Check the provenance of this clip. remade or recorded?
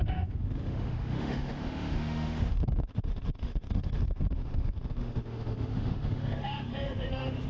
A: remade